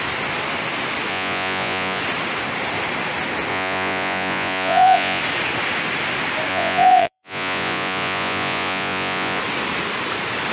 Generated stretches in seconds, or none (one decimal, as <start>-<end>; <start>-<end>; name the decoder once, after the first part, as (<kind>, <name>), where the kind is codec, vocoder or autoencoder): 1.1-2.0 (vocoder, Vocos); 3.5-5.2; 6.5-9.4